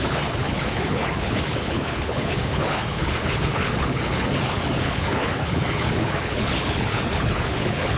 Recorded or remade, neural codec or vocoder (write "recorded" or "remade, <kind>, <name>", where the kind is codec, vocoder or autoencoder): remade, codec, HILCodec